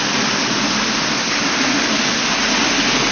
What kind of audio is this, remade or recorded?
recorded